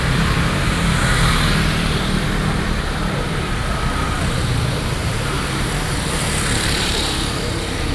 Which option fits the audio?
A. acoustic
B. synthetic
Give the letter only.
B